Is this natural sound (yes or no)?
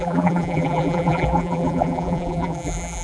no